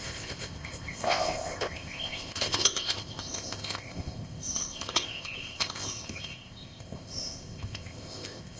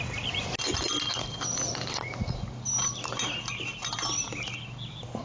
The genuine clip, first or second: second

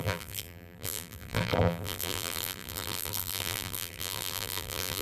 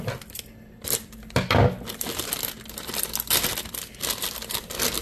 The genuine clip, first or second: second